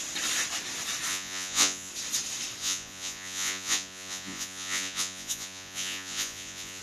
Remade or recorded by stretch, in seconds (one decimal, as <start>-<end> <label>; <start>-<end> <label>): 0.0-1.1 recorded; 1.1-1.9 remade; 1.9-2.6 recorded; 2.6-6.8 remade